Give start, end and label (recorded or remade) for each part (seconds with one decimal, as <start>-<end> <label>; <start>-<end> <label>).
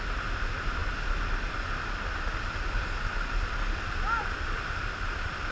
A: 0.0-5.5 recorded